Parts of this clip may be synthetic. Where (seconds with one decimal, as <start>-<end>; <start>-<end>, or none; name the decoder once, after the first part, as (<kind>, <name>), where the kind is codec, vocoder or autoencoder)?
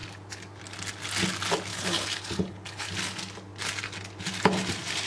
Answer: 1.7-2.9 (codec, HILCodec)